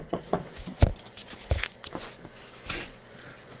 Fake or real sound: fake